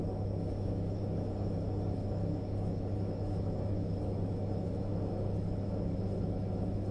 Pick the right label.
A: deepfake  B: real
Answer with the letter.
A